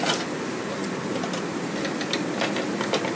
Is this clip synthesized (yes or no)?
no